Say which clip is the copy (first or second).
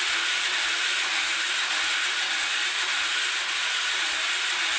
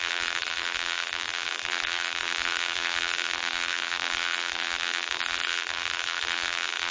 second